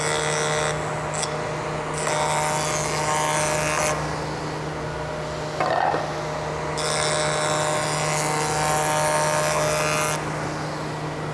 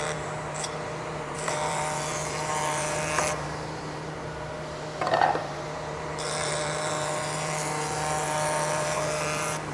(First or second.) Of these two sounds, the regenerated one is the second